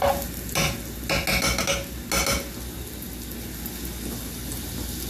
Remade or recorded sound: recorded